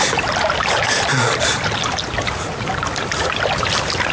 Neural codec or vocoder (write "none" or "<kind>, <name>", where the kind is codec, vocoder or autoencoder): none